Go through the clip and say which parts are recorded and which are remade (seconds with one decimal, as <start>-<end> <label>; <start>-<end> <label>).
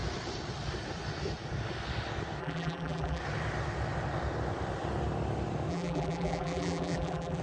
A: 0.0-2.4 recorded; 2.4-3.2 remade; 3.2-5.7 recorded; 5.7-7.4 remade